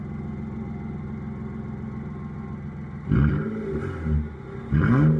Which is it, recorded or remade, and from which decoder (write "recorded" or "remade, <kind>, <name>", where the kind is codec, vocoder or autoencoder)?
recorded